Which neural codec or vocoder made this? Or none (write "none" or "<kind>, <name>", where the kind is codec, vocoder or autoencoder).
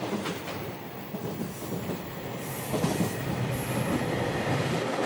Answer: vocoder, BigVGAN v2